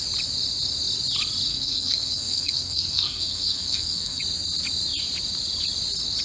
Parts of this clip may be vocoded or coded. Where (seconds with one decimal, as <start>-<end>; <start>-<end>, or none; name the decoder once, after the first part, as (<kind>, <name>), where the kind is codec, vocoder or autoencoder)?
1.5-4.2 (codec, SNAC)